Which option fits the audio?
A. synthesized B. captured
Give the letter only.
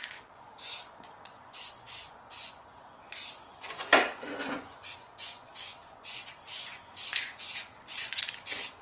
A